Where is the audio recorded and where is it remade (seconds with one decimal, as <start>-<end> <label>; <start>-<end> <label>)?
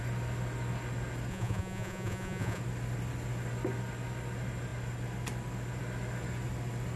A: 0.0-1.3 recorded; 1.3-2.6 remade; 2.6-7.0 recorded